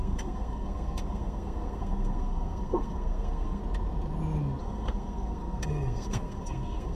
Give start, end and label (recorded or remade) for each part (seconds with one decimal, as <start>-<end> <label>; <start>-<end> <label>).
0.0-3.6 remade; 3.6-4.6 recorded; 4.6-6.9 remade

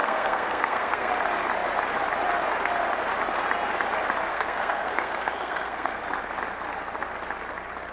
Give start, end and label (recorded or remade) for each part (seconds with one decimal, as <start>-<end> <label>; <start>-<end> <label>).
0.0-1.1 remade; 1.1-4.3 recorded; 4.3-6.0 remade; 6.0-7.9 recorded